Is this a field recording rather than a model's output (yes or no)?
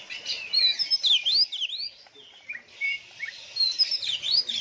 yes